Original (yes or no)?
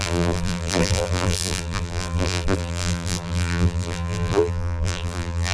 no